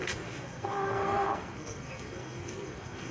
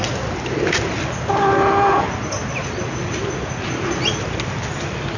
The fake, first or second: first